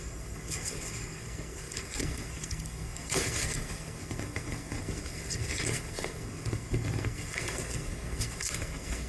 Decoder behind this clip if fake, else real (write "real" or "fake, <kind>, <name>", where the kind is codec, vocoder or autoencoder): fake, codec, SNAC